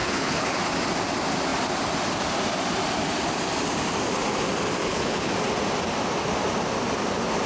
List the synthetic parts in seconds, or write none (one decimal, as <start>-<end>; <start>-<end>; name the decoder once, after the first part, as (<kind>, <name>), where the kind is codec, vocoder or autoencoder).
0.0-0.6 (codec, HILCodec); 4.8-5.3